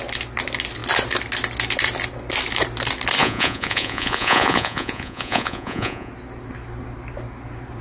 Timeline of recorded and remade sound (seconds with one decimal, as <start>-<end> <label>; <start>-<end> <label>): 0.0-3.2 recorded; 3.2-6.1 remade; 6.1-7.8 recorded